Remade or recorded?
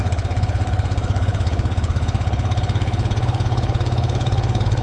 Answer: remade